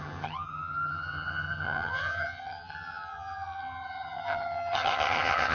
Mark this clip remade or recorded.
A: remade